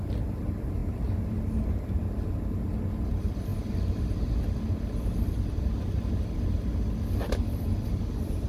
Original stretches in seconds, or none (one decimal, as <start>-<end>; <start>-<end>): 0.0-8.5